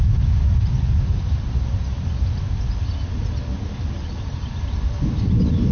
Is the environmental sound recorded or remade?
recorded